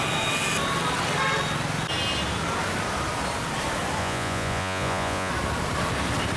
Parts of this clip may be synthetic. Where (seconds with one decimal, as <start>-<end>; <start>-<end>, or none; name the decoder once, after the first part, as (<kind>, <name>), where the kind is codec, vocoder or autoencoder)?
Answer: 4.0-5.3 (vocoder, Vocos)